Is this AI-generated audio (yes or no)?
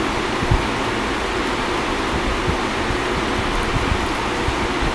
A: no